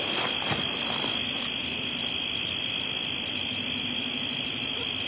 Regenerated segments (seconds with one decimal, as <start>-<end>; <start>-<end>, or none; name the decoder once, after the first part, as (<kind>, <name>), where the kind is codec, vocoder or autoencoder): 1.6-3.9 (vocoder, BigVGAN v2)